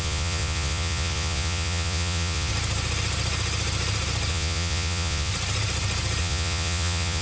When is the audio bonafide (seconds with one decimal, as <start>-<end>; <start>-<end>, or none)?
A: 2.5-4.3; 5.3-6.2